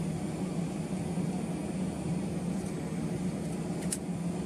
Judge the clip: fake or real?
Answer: real